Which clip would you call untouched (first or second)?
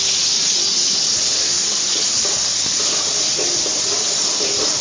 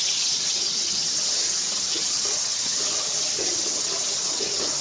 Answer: first